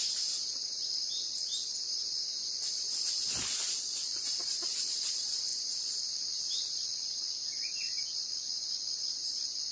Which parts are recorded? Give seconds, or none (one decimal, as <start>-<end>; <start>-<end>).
none